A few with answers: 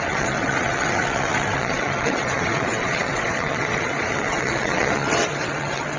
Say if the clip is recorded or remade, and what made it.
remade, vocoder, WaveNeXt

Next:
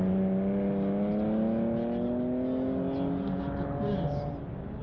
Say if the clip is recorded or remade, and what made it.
recorded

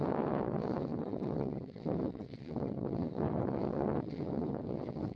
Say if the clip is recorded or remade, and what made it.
remade, vocoder, WaveNeXt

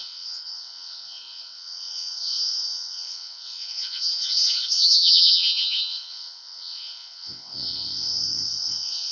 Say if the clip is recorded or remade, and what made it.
remade, vocoder, WaveNeXt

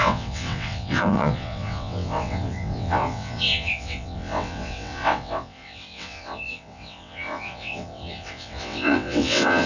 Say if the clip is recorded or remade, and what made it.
remade, vocoder, WaveNeXt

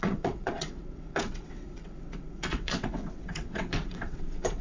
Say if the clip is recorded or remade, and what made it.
remade, vocoder, WaveNeXt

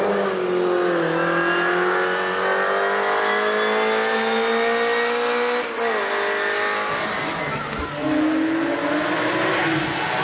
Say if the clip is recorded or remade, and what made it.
recorded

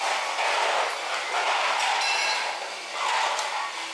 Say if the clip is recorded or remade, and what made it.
recorded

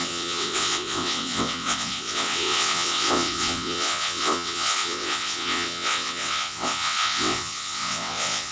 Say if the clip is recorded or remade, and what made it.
remade, vocoder, WaveNeXt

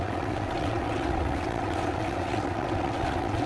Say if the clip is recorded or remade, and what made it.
remade, vocoder, WaveNeXt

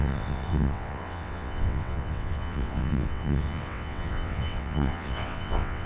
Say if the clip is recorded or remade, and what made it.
remade, vocoder, WaveNeXt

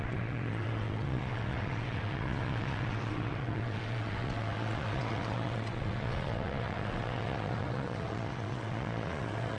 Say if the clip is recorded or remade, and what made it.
remade, vocoder, WaveNeXt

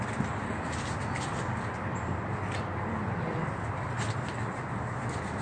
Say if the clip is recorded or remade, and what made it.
recorded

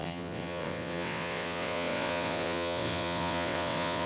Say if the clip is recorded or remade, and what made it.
remade, vocoder, WaveNeXt